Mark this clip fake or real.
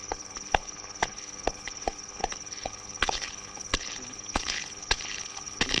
fake